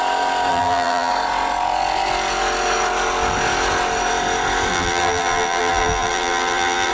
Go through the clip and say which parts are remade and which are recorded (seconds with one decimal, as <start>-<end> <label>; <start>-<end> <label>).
0.0-0.5 recorded; 0.5-1.1 remade; 1.1-4.7 recorded; 4.7-6.9 remade